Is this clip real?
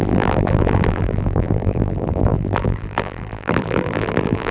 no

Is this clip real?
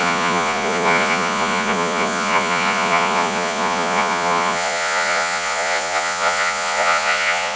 no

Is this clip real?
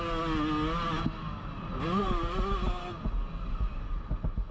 yes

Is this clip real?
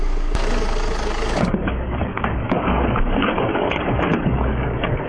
no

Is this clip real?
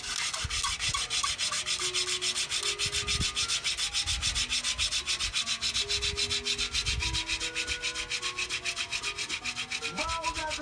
yes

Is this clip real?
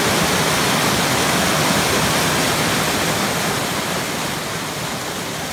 yes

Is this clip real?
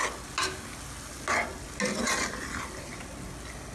yes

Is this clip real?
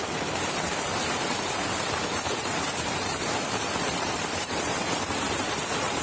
no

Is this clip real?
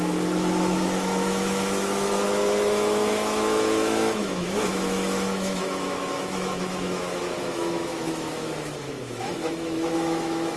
no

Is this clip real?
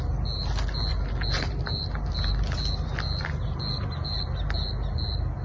yes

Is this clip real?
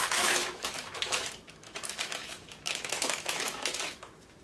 no